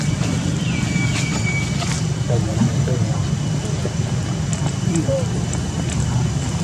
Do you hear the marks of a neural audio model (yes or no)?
no